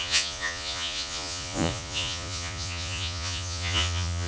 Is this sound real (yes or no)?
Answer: no